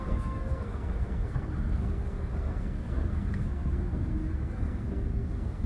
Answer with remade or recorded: remade